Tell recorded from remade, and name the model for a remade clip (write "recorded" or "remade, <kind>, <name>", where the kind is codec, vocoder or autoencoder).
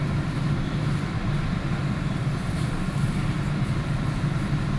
remade, vocoder, BigVGAN v2